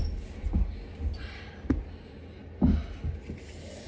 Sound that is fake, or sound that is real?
real